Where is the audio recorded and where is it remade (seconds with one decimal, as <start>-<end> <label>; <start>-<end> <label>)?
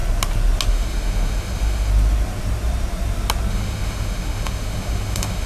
0.0-0.7 recorded; 0.7-1.9 remade; 1.9-3.5 recorded; 3.5-5.5 remade